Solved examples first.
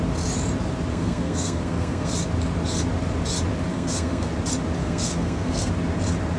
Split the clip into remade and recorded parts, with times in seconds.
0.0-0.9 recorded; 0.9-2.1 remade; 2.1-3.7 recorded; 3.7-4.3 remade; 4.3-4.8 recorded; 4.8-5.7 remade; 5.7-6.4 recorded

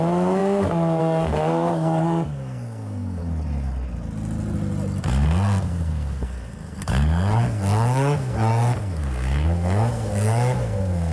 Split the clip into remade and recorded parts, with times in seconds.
0.0-3.2 remade; 3.2-5.0 recorded; 5.0-11.1 remade

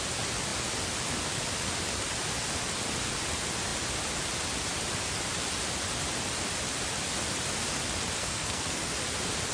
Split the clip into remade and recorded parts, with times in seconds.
0.0-8.2 recorded; 8.2-8.8 remade; 8.8-9.5 recorded